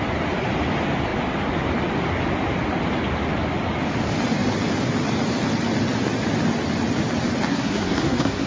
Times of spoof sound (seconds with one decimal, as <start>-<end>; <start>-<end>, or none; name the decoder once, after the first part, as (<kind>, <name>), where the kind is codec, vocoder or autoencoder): 7.5-8.5 (codec, SNAC)